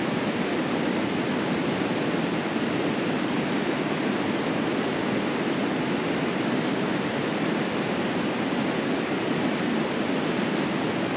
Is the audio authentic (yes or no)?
yes